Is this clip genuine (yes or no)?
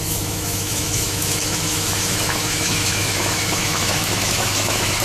no